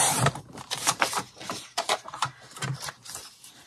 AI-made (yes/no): yes